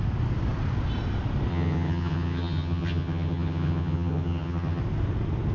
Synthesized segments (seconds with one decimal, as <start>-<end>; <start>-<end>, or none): 1.5-4.8